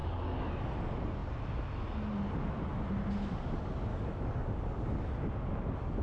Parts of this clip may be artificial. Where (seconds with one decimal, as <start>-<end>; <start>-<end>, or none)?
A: 0.0-0.5; 3.9-5.1